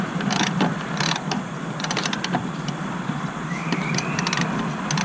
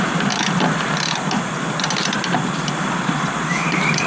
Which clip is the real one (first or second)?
second